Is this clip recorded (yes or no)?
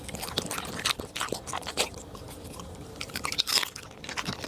yes